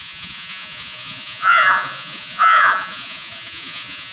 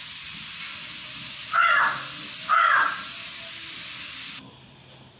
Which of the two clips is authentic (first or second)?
second